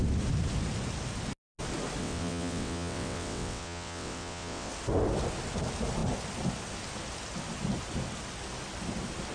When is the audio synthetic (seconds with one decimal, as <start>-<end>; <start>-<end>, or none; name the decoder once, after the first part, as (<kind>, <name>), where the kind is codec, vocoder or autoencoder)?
2.0-4.7 (vocoder, WaveNeXt)